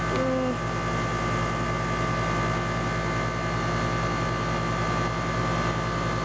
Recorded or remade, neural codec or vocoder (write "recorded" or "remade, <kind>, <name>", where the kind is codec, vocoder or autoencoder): recorded